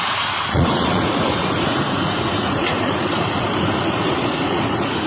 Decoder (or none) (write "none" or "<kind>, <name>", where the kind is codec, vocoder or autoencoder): vocoder, Vocos